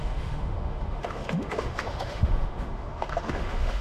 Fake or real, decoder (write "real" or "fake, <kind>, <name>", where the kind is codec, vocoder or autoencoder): fake, autoencoder, DAC-VAE